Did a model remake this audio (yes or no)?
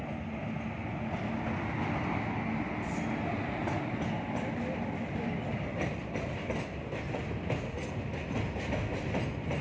no